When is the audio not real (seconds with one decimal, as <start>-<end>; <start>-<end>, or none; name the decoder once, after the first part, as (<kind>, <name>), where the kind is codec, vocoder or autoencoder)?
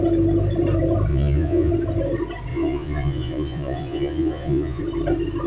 1.1-1.7 (vocoder, Vocos); 2.5-4.8